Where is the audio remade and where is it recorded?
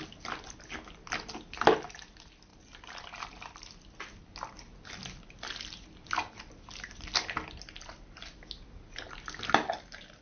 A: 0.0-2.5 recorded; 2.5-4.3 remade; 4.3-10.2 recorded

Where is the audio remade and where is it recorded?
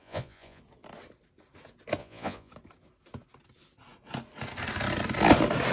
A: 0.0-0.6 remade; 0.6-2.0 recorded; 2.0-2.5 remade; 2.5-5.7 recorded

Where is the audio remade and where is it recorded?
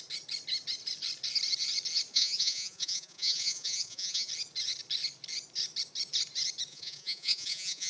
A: 0.0-2.1 recorded; 2.1-4.3 remade; 4.3-6.7 recorded; 6.7-7.9 remade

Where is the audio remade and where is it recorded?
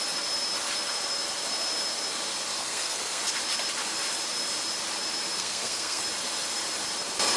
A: 0.0-2.5 recorded; 2.5-3.2 remade; 3.2-5.4 recorded; 5.4-6.0 remade; 6.0-7.4 recorded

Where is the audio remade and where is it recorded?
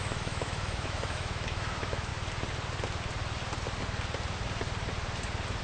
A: 0.0-2.1 remade; 2.1-5.6 recorded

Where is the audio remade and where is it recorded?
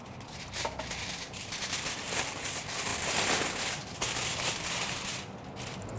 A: 0.0-6.0 recorded